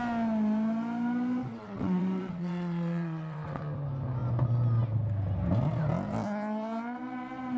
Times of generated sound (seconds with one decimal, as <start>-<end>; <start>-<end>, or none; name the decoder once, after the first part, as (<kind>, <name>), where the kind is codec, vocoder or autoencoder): 1.4-3.6 (vocoder, WaveNeXt)